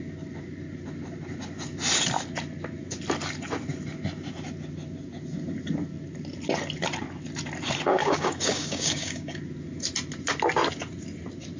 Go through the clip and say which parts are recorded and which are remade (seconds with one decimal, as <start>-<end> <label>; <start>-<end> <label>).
0.0-8.0 recorded; 8.0-9.4 remade; 9.4-11.6 recorded